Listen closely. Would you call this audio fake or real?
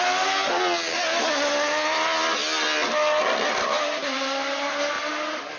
real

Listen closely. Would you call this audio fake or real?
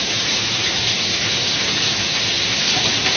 real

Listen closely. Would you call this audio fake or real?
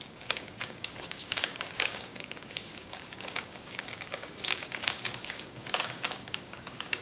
fake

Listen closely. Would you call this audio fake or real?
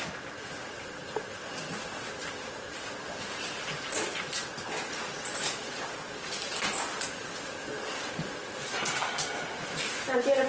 real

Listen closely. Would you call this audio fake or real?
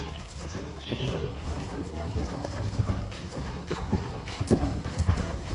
fake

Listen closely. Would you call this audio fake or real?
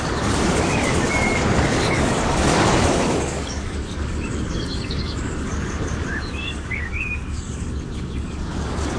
fake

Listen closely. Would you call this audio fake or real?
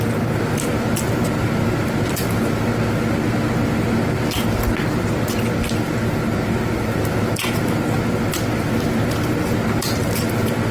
real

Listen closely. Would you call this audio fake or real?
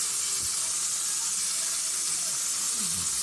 real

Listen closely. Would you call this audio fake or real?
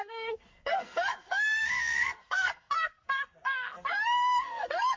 fake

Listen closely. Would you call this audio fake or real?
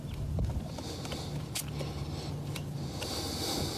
real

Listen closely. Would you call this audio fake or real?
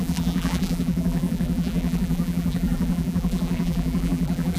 fake